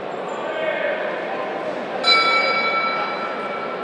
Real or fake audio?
real